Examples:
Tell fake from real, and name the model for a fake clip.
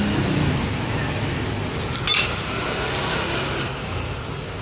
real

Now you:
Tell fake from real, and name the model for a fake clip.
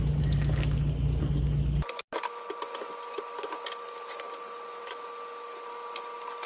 real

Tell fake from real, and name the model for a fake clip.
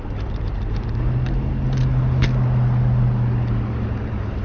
real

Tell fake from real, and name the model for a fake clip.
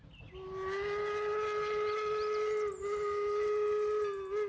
real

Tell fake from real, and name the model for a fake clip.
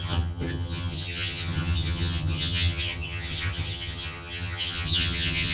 fake, vocoder, HiFi-GAN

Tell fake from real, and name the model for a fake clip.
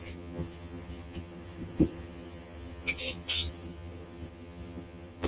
fake, vocoder, HiFi-GAN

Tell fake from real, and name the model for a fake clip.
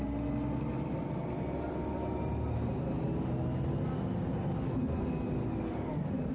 real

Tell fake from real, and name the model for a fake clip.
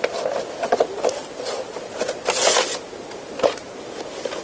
real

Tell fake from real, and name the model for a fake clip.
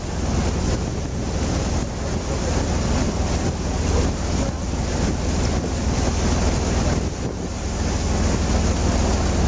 real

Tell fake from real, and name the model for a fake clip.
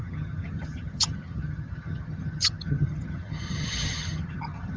fake, vocoder, HiFi-GAN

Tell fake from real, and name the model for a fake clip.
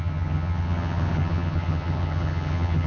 fake, vocoder, HiFi-GAN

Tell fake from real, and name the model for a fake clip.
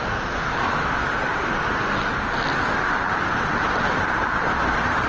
real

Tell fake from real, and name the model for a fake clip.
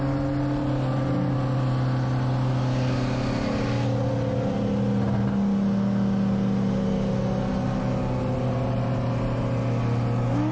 real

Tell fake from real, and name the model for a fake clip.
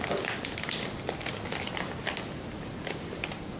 real